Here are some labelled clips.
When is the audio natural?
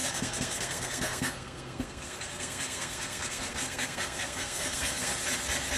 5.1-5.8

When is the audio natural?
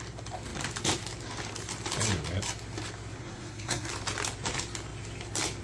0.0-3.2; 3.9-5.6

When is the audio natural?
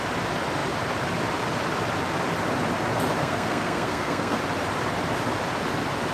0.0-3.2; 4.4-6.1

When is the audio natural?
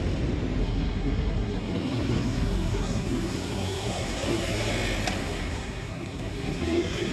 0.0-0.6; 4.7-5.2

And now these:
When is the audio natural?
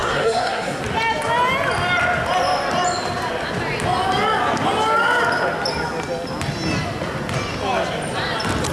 0.8-8.7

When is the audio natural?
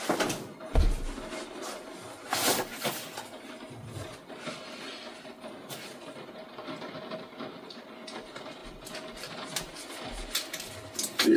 0.0-11.4